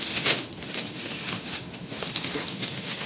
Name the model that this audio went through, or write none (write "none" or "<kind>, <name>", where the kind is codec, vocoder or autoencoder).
autoencoder, DAC-VAE